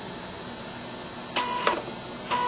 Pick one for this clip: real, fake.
real